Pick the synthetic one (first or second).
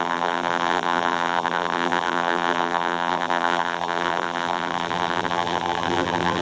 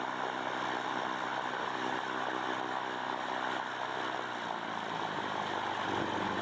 first